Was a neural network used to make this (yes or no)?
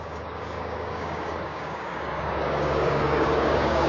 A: yes